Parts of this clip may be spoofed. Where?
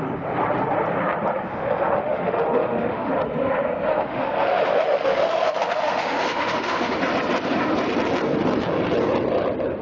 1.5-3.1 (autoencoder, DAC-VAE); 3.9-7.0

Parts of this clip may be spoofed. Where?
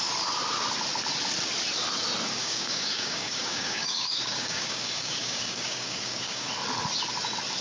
2.4-6.5 (codec, DAC)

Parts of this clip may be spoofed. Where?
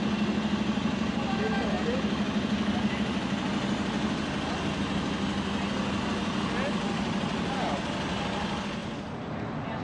none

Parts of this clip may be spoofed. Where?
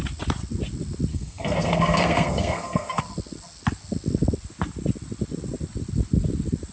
1.1-3.0 (codec, SNAC)